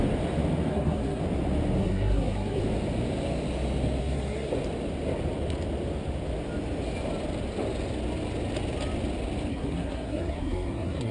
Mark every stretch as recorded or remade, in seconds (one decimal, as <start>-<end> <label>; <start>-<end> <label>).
0.0-0.7 recorded; 0.7-1.2 remade; 1.2-1.8 recorded; 1.8-2.6 remade; 2.6-4.0 recorded; 4.0-4.5 remade; 4.5-9.5 recorded; 9.5-11.1 remade